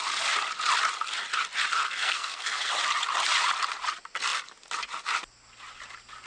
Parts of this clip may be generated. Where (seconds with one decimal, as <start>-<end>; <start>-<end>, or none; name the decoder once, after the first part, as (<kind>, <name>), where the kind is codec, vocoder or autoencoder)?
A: 1.8-2.7 (codec, SNAC)